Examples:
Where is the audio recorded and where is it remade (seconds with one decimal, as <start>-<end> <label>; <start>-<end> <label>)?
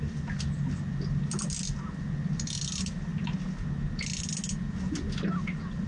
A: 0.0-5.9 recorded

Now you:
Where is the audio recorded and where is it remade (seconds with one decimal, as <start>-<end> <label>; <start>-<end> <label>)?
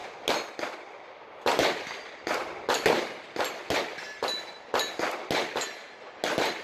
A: 0.0-6.6 recorded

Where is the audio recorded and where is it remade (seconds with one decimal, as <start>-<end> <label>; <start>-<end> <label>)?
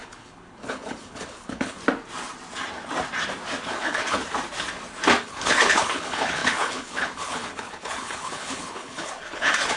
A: 0.0-1.8 remade; 1.8-3.6 recorded; 3.6-4.2 remade; 4.2-5.2 recorded; 5.2-9.8 remade